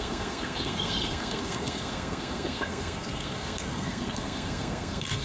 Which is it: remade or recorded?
remade